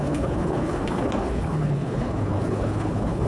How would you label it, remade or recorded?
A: remade